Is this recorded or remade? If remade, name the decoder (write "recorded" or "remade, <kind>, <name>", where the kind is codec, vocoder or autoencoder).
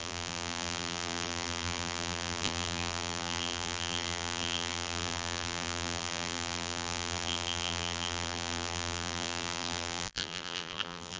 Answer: remade, vocoder, BigVGAN v2